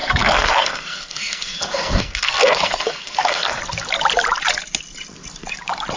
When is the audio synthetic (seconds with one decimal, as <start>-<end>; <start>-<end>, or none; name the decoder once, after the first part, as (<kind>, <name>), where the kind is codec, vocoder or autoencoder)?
0.0-3.6 (codec, SNAC)